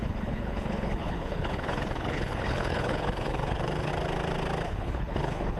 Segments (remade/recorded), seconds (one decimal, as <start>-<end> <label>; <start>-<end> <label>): 0.0-3.9 remade; 3.9-4.7 recorded; 4.7-5.6 remade